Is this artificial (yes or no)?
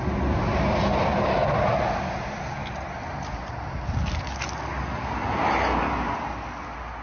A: no